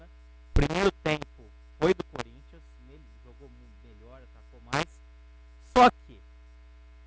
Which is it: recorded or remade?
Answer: recorded